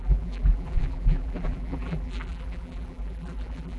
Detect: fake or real fake